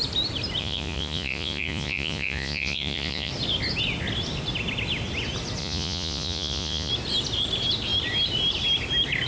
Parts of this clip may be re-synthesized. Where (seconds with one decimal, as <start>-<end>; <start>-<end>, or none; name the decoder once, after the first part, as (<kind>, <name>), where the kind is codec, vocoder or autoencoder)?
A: 0.6-3.3 (vocoder, Vocos); 5.6-6.9